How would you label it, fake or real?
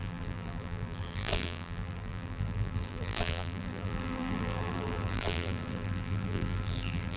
fake